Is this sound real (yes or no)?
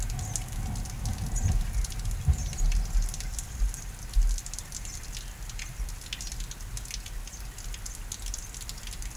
yes